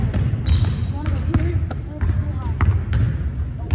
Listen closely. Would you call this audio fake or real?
real